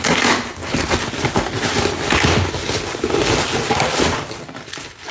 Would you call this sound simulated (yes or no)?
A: no